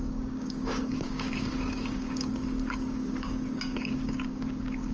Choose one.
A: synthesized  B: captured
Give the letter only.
A